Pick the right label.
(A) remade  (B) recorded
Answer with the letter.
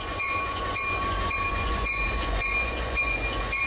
A